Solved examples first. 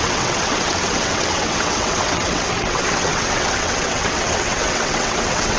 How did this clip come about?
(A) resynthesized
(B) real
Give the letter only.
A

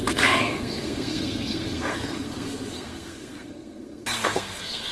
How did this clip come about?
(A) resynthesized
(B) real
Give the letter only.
A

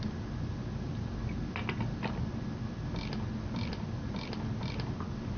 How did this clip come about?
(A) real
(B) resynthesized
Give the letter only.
A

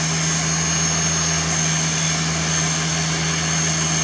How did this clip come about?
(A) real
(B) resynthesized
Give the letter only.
A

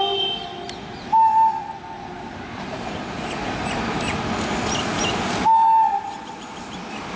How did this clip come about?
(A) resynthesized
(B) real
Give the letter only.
B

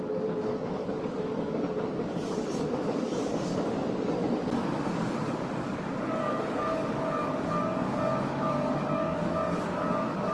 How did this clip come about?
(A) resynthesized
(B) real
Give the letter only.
A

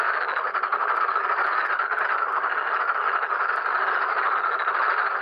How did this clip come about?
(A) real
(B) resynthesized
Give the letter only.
A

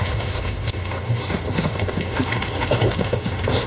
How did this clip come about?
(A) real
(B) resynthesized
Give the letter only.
B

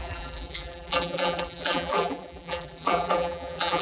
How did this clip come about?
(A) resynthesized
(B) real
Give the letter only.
A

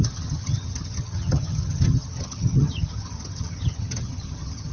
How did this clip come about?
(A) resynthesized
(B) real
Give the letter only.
A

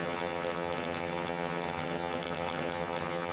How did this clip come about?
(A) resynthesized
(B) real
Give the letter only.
A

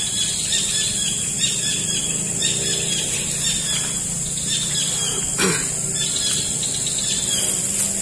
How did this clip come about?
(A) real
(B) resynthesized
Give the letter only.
A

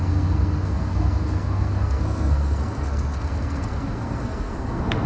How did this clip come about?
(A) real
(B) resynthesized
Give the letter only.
B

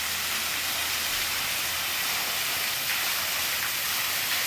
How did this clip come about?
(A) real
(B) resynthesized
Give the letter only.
A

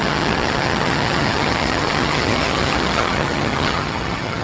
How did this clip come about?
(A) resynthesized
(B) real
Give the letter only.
A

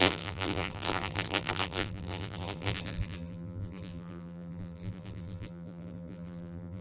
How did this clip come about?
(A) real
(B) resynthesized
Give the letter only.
B